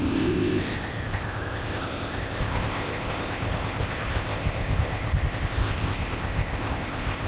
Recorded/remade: remade